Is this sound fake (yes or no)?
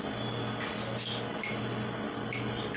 no